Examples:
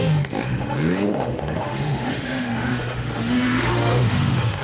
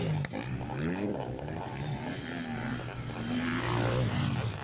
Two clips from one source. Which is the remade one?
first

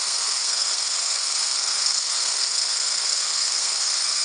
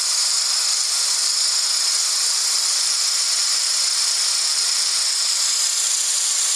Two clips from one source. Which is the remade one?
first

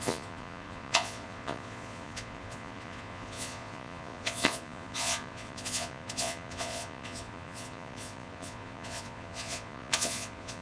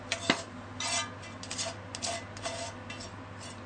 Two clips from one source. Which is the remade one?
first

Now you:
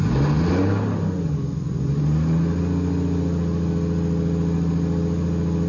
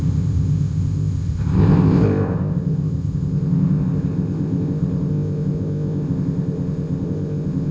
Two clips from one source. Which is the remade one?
second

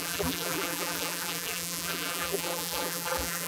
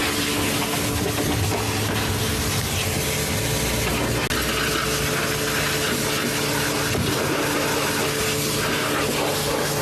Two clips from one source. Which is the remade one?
first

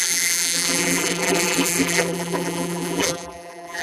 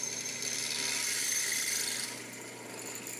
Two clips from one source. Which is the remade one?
first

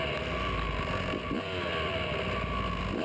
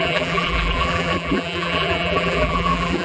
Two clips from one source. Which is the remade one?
second